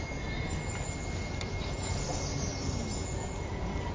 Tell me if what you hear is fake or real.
real